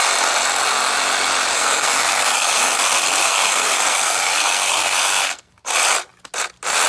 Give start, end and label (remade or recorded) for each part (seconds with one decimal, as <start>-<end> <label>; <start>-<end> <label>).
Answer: 0.0-1.5 recorded; 1.5-5.6 remade; 5.6-6.9 recorded